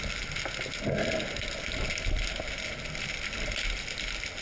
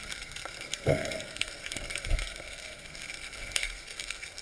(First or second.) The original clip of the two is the first